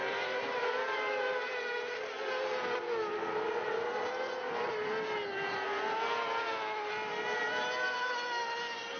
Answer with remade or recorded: recorded